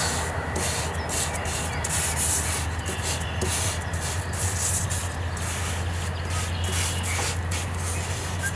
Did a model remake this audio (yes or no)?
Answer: no